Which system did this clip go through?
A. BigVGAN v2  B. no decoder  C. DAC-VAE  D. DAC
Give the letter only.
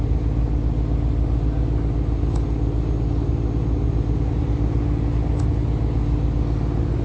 B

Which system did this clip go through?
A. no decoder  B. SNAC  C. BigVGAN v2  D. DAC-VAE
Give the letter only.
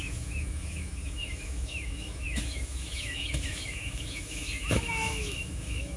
D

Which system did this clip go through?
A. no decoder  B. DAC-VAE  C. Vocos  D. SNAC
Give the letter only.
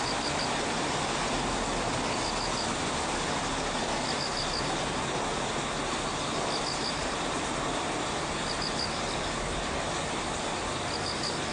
A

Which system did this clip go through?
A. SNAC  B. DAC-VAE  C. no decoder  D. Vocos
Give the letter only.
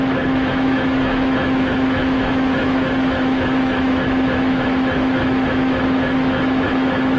B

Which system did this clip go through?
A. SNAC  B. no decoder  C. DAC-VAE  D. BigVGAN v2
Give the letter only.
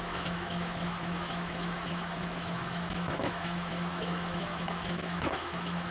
C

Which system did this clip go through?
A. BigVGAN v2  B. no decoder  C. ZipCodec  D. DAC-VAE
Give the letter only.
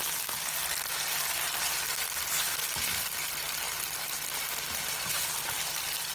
B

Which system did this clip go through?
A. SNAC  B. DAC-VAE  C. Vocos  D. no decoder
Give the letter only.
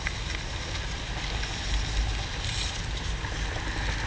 D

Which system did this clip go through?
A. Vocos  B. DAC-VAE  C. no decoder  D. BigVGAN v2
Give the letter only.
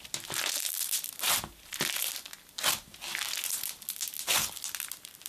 C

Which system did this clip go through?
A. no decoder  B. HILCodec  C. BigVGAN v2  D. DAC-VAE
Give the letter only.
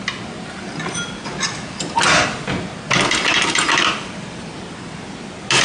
A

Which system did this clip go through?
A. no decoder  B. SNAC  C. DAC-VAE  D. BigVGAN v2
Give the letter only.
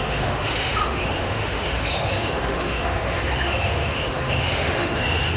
C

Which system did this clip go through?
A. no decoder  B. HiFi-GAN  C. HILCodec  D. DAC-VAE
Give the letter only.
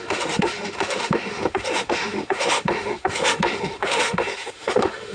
D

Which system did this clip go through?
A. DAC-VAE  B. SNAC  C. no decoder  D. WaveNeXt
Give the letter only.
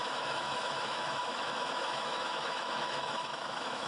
A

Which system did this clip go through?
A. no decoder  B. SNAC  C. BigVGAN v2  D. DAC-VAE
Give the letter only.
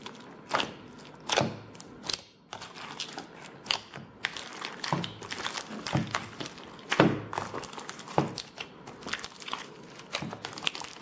A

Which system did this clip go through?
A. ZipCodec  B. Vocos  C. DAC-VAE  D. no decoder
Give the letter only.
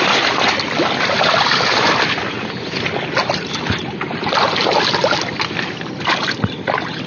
D